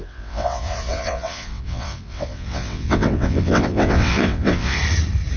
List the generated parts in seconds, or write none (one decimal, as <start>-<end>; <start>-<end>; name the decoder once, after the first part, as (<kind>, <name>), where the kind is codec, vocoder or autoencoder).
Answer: 0.0-4.8 (vocoder, WaveNeXt)